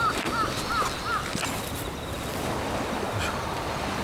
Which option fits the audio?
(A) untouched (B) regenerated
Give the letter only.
A